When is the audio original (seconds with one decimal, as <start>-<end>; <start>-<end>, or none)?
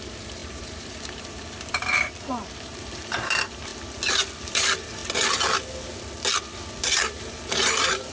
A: 3.7-4.5; 5.0-6.8